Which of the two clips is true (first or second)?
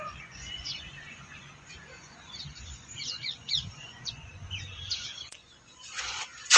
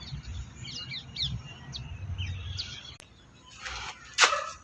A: second